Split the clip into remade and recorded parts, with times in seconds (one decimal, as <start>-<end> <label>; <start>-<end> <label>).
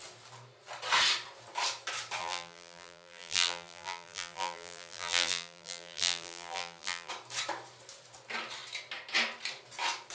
0.0-2.2 recorded; 2.2-7.1 remade; 7.1-10.1 recorded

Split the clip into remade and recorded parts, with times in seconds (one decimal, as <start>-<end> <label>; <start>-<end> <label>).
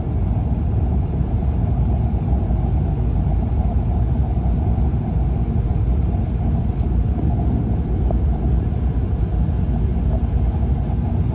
0.0-1.4 remade; 1.4-5.8 recorded; 5.8-9.9 remade; 9.9-11.3 recorded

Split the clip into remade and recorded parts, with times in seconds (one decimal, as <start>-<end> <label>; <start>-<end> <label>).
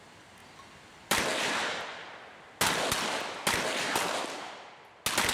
0.0-0.4 recorded; 0.4-1.2 remade; 1.2-5.3 recorded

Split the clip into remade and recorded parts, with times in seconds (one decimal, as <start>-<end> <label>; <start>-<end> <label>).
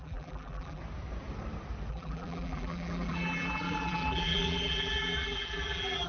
0.0-0.8 remade; 0.8-1.9 recorded; 1.9-6.1 remade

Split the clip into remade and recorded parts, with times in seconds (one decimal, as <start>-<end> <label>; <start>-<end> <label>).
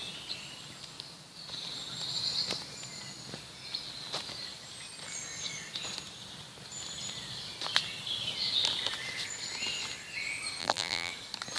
0.0-10.6 recorded; 10.6-11.1 remade; 11.1-11.6 recorded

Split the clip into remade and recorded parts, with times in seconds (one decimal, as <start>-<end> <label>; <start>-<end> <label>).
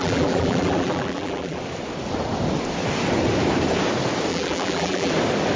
0.0-1.6 remade; 1.6-4.3 recorded; 4.3-5.1 remade; 5.1-5.6 recorded